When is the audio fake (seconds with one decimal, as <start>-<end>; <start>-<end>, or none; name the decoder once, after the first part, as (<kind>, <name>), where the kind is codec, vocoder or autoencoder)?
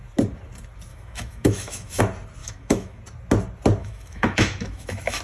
0.9-2.0 (autoencoder, DAC-VAE); 2.4-3.0; 3.8-5.2